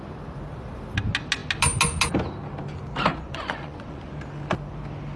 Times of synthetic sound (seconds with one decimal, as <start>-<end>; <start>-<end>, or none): 3.1-4.1